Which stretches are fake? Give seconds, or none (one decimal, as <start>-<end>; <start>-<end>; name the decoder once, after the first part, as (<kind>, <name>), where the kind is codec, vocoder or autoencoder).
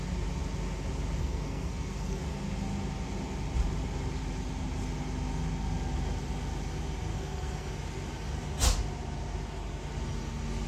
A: 1.2-2.2 (codec, SNAC); 7.1-7.7